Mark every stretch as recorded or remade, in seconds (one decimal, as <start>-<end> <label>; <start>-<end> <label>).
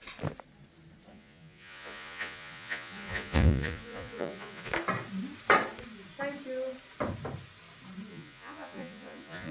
0.0-1.1 recorded; 1.1-4.7 remade; 4.7-8.1 recorded; 8.1-9.5 remade